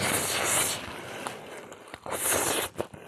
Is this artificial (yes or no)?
no